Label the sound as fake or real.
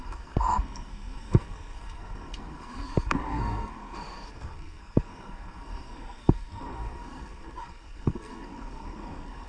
fake